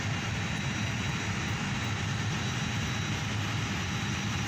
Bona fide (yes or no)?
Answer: yes